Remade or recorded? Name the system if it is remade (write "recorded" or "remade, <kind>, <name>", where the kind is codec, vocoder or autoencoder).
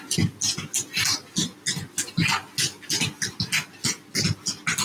recorded